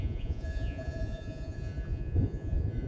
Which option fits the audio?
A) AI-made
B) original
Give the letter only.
A